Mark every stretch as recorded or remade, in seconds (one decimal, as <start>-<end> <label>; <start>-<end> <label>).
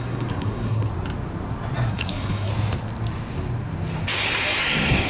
0.0-0.9 remade; 0.9-1.9 recorded; 1.9-2.5 remade; 2.5-4.6 recorded; 4.6-5.1 remade